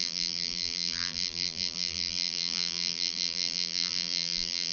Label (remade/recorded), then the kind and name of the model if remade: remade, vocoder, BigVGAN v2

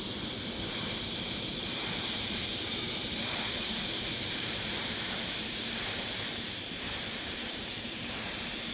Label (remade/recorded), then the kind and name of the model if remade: remade, vocoder, BigVGAN v2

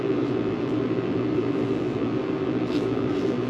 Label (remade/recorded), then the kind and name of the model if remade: remade, vocoder, BigVGAN v2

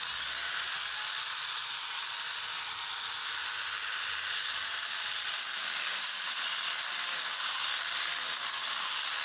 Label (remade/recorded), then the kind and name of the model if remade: recorded